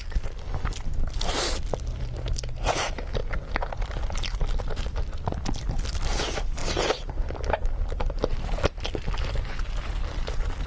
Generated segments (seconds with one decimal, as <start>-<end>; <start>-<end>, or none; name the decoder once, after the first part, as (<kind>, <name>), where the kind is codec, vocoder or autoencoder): 3.2-4.4 (vocoder, BigVGAN v2); 6.6-9.6